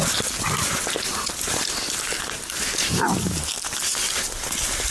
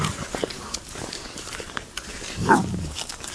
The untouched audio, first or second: first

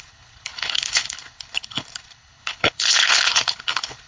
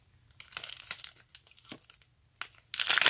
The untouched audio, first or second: second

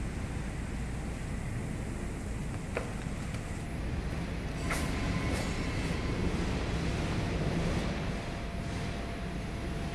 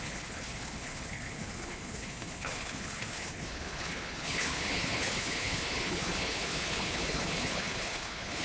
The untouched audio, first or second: first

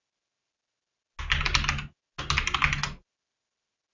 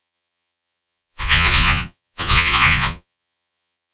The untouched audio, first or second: first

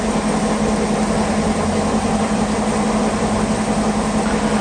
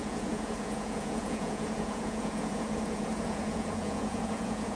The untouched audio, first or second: first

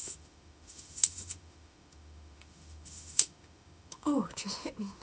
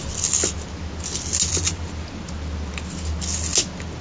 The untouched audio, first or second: second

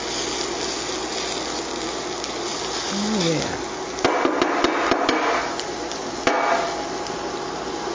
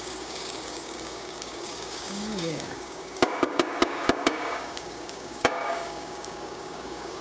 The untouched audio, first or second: first